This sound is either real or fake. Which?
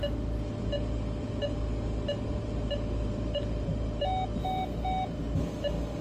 real